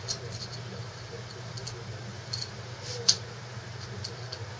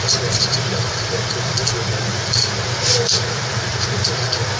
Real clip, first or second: first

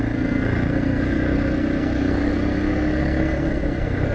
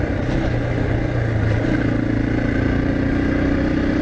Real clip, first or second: second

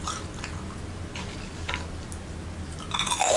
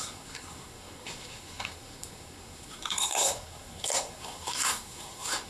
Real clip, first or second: first